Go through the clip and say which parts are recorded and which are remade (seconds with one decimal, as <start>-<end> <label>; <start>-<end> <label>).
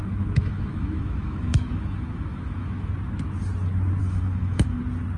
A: 0.0-2.9 remade; 2.9-4.0 recorded; 4.0-4.8 remade; 4.8-5.2 recorded